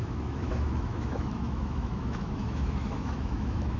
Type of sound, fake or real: fake